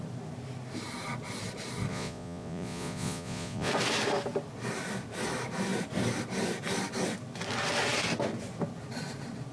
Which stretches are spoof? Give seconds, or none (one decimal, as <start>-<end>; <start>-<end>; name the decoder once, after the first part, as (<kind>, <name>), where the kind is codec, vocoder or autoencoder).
1.9-3.7 (vocoder, Vocos)